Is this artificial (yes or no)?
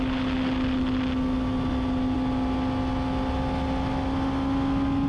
no